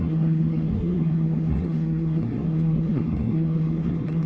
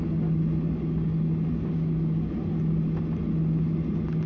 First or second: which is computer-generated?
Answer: first